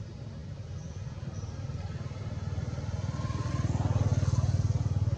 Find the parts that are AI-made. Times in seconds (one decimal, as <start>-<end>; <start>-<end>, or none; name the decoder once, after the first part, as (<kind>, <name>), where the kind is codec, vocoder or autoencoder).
0.4-3.5 (vocoder, BigVGAN v2)